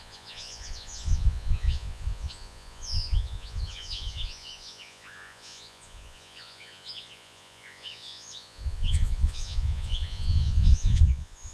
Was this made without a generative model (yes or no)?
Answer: no